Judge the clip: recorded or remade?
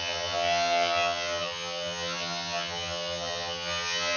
remade